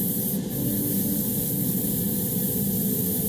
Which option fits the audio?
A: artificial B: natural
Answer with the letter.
B